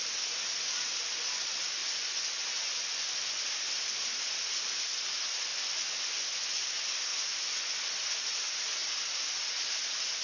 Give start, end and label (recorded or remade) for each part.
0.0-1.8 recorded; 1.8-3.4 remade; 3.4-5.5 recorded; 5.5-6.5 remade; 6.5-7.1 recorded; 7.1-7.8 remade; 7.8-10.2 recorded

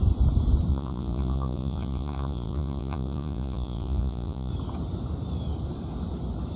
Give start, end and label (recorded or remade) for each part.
0.0-0.7 recorded; 0.7-4.5 remade; 4.5-6.6 recorded

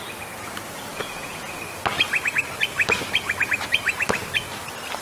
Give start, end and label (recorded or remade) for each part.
0.0-0.9 recorded; 0.9-1.6 remade; 1.6-5.0 recorded

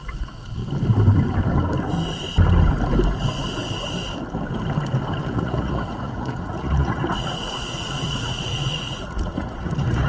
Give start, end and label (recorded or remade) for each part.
0.0-0.6 remade; 0.6-5.2 recorded; 5.2-10.1 remade

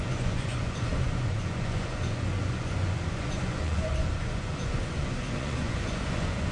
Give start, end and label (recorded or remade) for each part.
0.0-6.5 remade